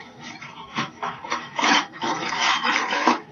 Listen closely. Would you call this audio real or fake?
fake